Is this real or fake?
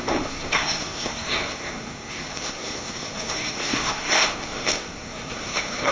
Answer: fake